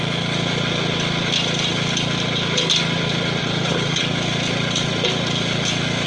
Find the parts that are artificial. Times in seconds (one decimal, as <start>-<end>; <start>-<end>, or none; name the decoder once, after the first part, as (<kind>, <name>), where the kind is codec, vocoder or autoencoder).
3.4-4.0 (codec, HILCodec)